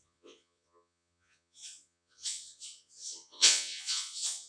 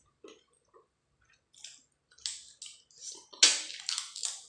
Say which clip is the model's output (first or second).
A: first